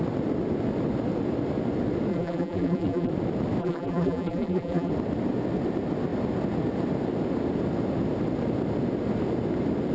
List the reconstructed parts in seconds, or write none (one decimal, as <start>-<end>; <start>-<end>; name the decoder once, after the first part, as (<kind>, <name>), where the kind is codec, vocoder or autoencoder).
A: 2.1-3.1 (vocoder, BigVGAN v2); 3.6-4.9